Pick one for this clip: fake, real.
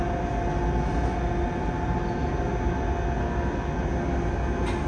real